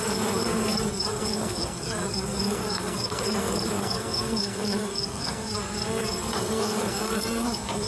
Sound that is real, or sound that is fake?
fake